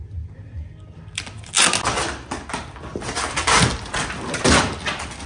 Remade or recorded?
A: recorded